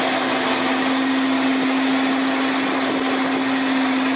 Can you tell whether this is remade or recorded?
recorded